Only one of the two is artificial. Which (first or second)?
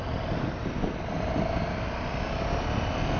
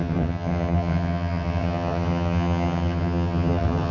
second